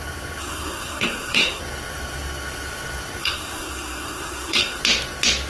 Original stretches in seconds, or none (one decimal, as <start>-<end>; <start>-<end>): 0.0-0.4; 1.6-3.2; 4.8-5.5